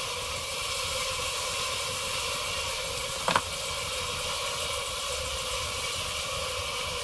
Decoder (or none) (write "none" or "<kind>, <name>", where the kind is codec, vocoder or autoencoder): none